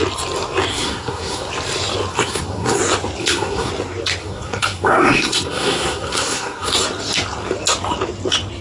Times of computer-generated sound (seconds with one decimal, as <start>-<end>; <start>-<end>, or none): 0.7-1.5; 2.1-2.8; 3.2-3.7; 4.2-6.7